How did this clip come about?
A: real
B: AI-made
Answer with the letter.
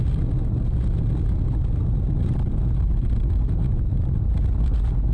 A